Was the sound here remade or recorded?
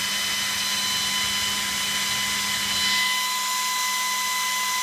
recorded